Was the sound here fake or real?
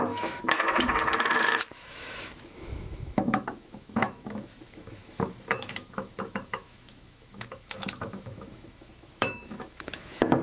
fake